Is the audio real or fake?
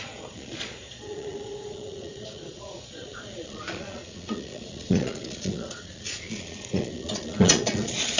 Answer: fake